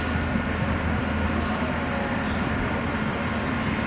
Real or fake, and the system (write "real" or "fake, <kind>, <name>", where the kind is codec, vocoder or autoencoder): real